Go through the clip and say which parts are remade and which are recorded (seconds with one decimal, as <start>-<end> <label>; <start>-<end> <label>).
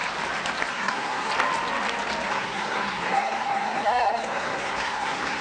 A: 0.0-0.7 recorded; 0.7-1.3 remade; 1.3-2.3 recorded; 2.3-5.4 remade